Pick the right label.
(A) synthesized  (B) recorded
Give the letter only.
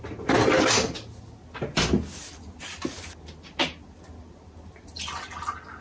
B